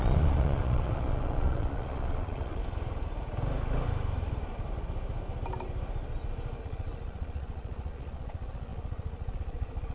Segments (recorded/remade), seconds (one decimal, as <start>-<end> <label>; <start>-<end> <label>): 0.0-2.6 remade; 2.6-6.6 recorded; 6.6-9.9 remade